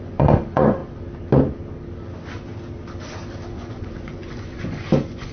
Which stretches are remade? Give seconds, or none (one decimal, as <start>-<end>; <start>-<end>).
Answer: 0.0-0.8; 3.5-5.3